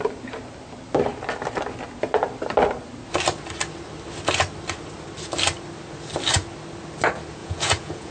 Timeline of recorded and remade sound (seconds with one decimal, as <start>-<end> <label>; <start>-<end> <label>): 0.0-7.4 recorded; 7.4-8.1 remade